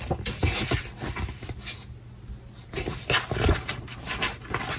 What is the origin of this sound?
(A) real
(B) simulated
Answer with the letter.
A